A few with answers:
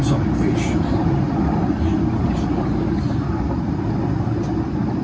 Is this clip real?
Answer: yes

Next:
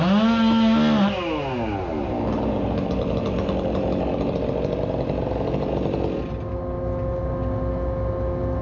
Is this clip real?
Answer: yes